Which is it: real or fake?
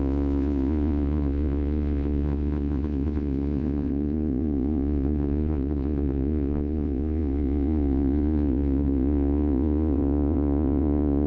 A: fake